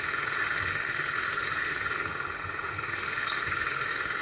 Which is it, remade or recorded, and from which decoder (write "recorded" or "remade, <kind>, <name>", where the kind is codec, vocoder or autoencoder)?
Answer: remade, autoencoder, DAC-VAE